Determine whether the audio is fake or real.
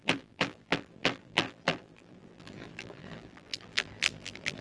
fake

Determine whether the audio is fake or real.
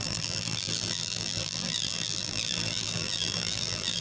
fake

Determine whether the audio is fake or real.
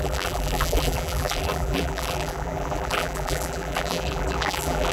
fake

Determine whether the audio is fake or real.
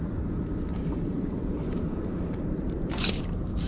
fake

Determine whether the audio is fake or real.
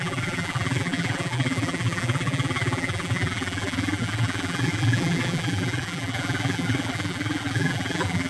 fake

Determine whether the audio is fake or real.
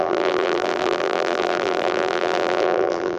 fake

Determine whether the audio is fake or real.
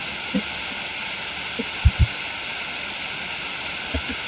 real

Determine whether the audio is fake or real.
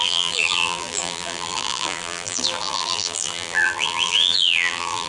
fake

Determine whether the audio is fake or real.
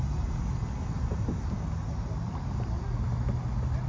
real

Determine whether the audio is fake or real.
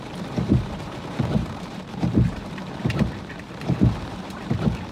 fake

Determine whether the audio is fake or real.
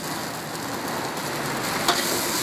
real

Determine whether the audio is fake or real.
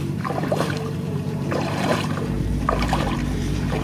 fake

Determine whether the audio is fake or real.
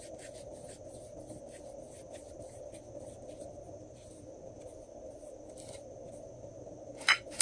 real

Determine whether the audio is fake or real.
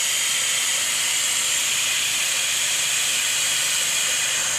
fake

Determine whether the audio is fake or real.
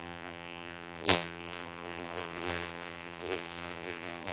fake